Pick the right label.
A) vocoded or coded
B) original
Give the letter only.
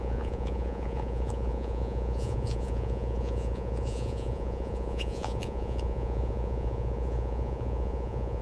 A